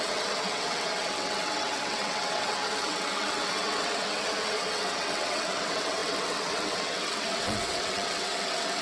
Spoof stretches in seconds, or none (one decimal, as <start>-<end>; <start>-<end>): 0.0-8.8

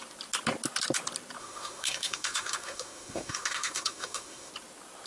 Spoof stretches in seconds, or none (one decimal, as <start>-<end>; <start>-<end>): 1.4-4.5

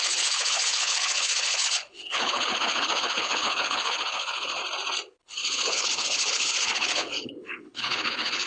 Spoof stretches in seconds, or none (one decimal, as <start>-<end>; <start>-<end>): 0.0-4.6; 5.2-8.5

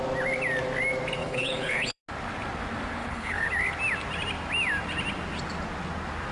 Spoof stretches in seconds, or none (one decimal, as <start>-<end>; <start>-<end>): 1.2-2.0; 3.0-3.5

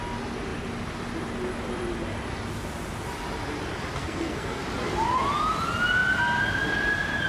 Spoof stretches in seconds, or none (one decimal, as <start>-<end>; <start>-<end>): 4.0-4.6